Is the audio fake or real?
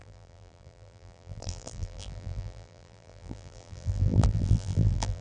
fake